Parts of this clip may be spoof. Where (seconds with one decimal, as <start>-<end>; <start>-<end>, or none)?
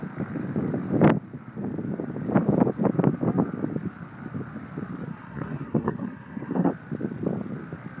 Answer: 5.1-6.7